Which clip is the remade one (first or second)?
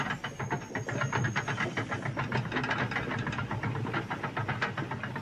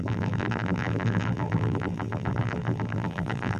second